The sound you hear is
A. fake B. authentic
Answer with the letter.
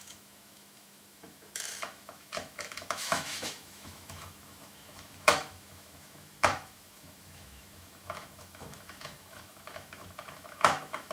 A